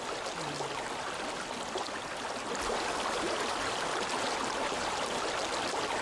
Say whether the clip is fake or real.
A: real